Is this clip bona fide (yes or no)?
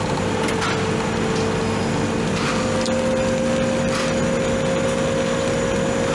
yes